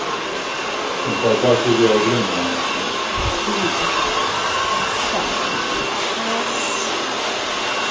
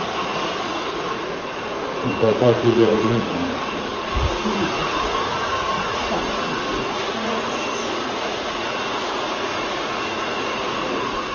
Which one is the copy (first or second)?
second